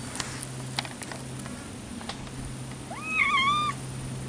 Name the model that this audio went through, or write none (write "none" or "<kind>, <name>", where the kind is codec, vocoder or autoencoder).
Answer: none